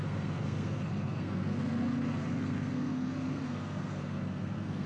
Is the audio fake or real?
fake